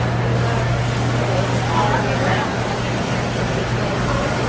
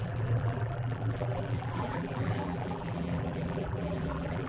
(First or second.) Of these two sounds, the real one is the first